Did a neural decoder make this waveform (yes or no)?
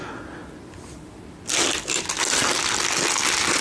no